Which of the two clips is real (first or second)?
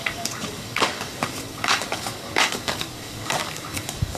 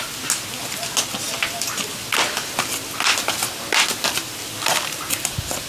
second